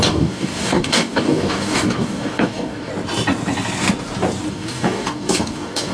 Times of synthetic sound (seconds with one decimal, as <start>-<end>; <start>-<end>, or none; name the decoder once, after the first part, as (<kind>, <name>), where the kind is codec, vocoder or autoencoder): 0.0-2.9 (codec, DAC); 4.5-5.9